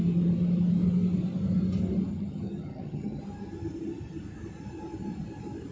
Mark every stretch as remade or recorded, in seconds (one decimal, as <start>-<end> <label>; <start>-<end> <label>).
0.0-2.1 recorded; 2.1-3.2 remade; 3.2-5.7 recorded